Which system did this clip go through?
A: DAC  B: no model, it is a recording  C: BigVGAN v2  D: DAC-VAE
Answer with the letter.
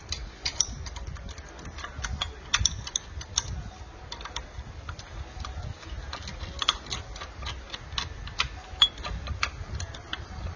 B